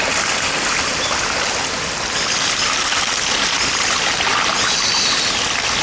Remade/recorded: recorded